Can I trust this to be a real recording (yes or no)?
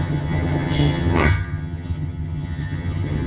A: no